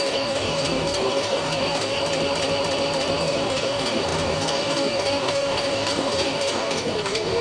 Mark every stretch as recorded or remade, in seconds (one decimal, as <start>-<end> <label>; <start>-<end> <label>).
0.0-2.0 remade; 2.0-3.2 recorded; 3.2-7.4 remade